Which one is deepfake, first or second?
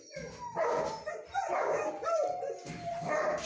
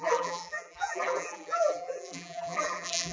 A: second